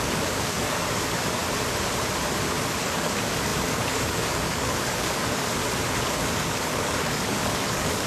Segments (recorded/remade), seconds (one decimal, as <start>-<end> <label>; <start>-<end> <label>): 0.0-1.4 remade; 1.4-2.8 recorded; 2.8-5.6 remade; 5.6-6.1 recorded; 6.1-8.1 remade